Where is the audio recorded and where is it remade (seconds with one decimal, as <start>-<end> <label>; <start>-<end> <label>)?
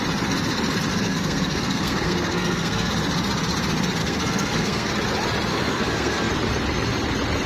0.0-0.9 recorded; 0.9-2.9 remade; 2.9-4.0 recorded; 4.0-4.9 remade; 4.9-5.5 recorded; 5.5-6.3 remade; 6.3-7.5 recorded